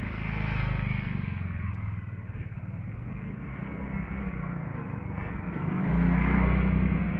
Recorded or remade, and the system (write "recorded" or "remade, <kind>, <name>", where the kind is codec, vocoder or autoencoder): remade, codec, SNAC